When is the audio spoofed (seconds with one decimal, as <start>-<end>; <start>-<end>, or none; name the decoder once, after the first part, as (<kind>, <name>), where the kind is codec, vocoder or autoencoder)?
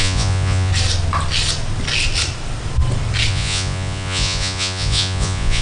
0.0-0.7 (vocoder, Vocos); 3.3-5.6